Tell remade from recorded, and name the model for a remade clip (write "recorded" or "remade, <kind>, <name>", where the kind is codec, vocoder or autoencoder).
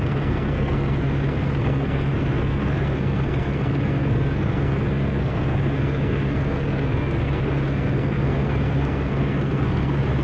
remade, codec, SNAC